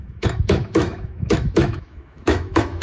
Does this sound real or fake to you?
fake